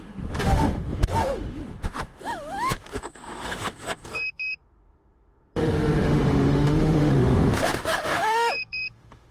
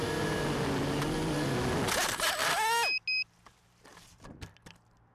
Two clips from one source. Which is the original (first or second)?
second